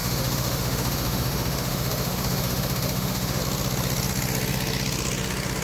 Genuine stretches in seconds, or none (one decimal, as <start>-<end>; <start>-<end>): 3.4-5.6

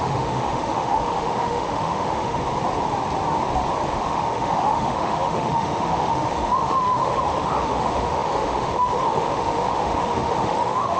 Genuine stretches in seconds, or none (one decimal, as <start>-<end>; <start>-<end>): 2.4-3.9